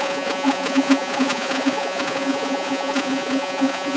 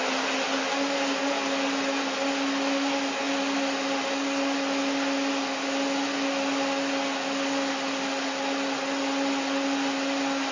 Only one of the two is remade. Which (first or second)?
first